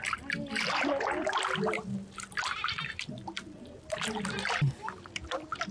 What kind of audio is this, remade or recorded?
recorded